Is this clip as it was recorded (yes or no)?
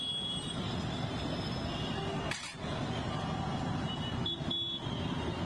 yes